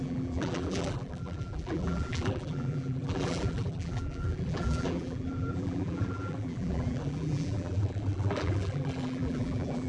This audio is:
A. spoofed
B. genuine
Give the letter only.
A